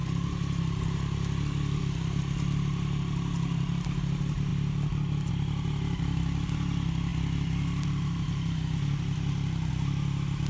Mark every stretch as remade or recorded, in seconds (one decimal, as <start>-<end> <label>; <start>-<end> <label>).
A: 0.0-10.5 recorded